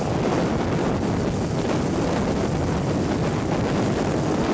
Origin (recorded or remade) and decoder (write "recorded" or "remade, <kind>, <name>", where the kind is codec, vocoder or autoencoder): recorded